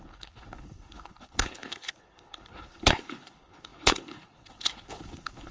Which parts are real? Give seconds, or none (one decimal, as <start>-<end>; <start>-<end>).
none